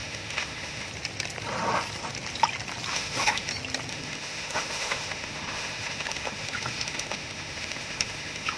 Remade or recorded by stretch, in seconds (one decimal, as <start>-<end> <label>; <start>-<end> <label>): 0.0-0.9 remade; 0.9-2.9 recorded; 2.9-3.5 remade; 3.5-3.9 recorded; 3.9-8.6 remade